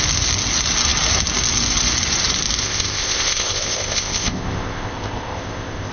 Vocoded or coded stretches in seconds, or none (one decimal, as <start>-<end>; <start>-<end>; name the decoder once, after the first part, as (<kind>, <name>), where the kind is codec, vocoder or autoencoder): 2.6-5.9 (codec, ZipCodec)